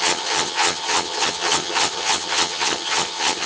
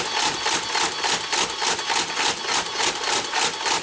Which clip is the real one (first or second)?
second